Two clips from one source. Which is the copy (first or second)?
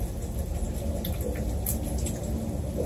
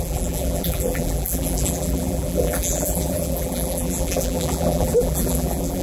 second